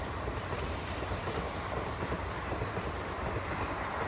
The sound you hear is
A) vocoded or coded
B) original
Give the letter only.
A